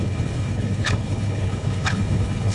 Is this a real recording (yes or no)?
no